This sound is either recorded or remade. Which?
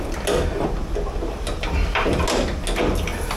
recorded